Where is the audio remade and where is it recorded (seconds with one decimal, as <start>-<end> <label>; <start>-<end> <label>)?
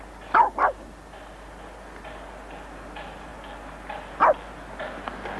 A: 0.0-5.4 recorded